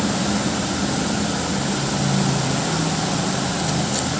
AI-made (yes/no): no